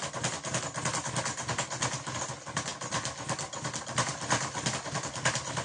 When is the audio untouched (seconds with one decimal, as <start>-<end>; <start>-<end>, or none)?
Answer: 0.0-5.6